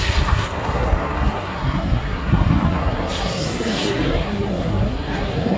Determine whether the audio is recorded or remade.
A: remade